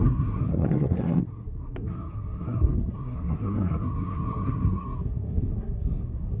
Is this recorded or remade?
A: remade